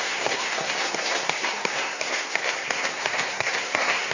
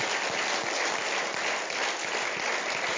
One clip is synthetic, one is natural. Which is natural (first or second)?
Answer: second